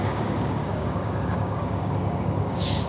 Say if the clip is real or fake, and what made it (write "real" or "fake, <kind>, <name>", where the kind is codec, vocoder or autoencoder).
fake, codec, DAC